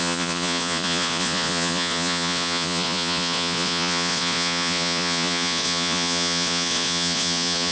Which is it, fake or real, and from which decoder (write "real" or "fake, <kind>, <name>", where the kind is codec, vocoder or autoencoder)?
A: fake, vocoder, Vocos